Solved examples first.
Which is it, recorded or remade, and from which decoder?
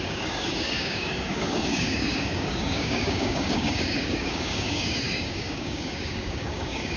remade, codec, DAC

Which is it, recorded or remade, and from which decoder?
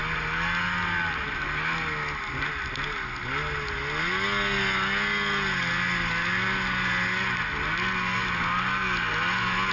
recorded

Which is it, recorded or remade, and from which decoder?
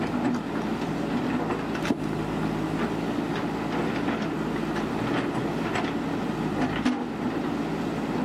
recorded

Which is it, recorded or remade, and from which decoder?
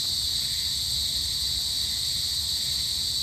recorded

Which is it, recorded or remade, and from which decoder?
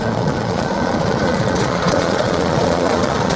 remade, vocoder, Vocos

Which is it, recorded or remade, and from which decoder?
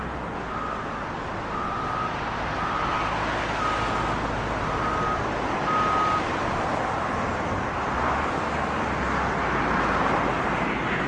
recorded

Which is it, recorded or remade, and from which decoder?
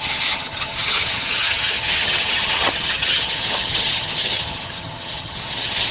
remade, vocoder, HiFi-GAN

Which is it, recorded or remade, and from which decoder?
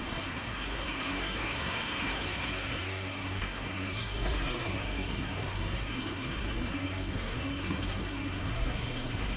remade, codec, SNAC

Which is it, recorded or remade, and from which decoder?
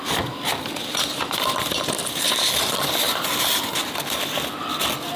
recorded